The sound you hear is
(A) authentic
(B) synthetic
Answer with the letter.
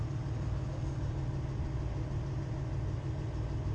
A